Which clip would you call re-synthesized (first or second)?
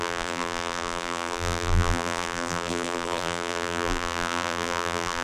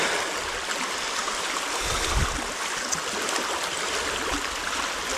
first